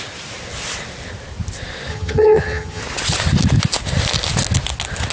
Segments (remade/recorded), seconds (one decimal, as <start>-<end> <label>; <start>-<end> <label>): 0.0-1.9 recorded; 1.9-2.8 remade; 2.8-5.1 recorded